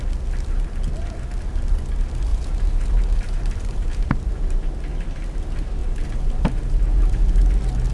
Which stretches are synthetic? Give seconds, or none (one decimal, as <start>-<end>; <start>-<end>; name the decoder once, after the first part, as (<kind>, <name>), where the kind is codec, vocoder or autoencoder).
2.3-4.3 (vocoder, BigVGAN v2); 5.8-7.4